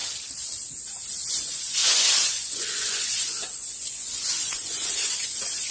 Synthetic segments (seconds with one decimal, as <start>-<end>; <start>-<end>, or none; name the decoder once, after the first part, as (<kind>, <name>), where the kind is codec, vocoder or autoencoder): 1.3-5.7 (vocoder, Vocos)